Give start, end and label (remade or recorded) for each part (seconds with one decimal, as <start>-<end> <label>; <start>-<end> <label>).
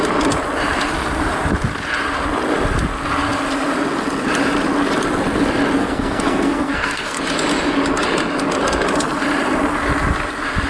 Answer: 0.0-5.8 recorded; 5.8-7.2 remade; 7.2-10.7 recorded